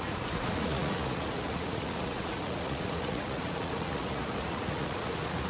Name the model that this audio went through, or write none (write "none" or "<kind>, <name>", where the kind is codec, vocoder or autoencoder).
vocoder, Vocos